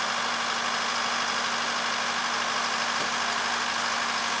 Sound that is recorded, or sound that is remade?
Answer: recorded